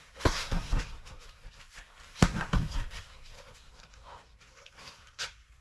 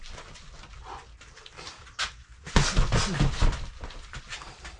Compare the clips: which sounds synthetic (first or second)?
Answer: first